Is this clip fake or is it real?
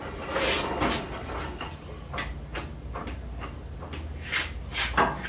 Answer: real